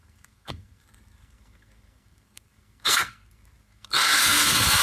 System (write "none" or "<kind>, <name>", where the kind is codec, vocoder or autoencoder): codec, SNAC